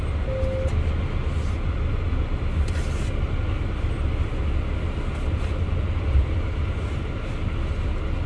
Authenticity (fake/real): real